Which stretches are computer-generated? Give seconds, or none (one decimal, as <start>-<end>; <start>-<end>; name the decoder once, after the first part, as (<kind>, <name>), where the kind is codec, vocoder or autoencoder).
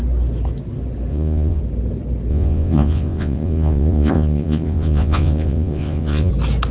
1.1-1.6 (vocoder, Vocos); 2.3-6.3